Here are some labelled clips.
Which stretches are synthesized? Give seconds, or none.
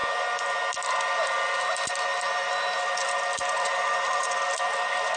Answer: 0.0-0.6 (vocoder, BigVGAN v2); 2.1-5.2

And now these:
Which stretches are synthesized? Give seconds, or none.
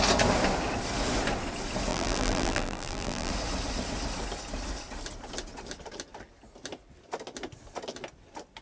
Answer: 1.9-3.3 (vocoder, BigVGAN v2)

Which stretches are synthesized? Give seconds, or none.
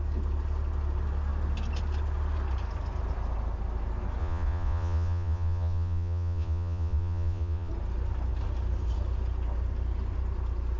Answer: 4.2-7.7 (vocoder, Vocos)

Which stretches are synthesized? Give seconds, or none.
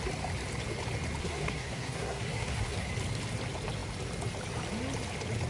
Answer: 1.2-2.9 (codec, SNAC)